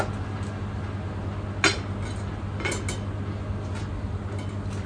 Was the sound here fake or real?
real